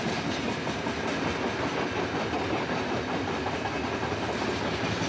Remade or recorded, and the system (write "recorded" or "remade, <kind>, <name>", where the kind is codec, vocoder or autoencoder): recorded